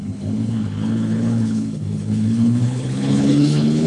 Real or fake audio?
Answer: fake